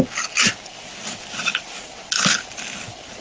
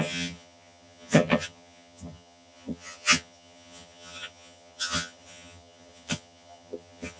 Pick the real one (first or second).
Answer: first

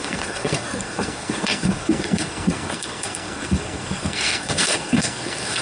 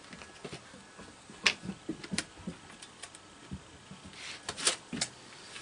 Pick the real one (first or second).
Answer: second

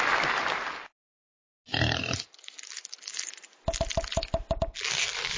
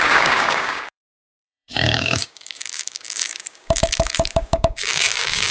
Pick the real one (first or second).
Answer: first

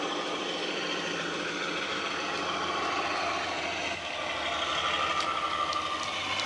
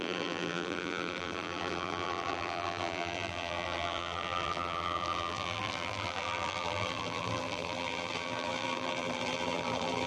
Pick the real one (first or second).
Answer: first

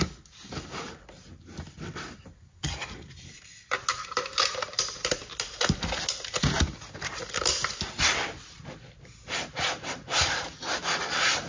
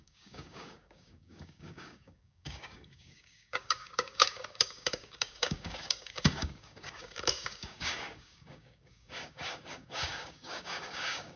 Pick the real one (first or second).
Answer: first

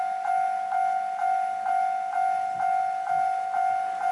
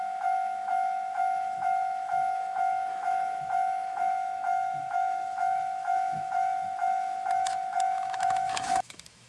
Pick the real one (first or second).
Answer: first